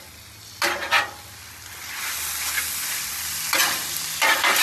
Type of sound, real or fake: real